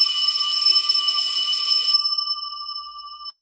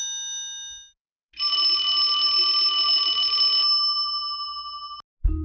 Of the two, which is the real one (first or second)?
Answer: second